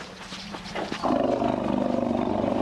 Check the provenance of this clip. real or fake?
real